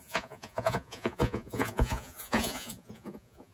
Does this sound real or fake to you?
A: fake